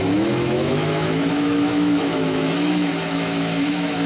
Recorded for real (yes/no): no